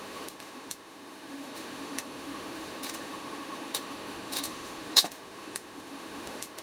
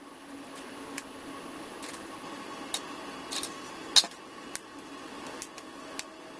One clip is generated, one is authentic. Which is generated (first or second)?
first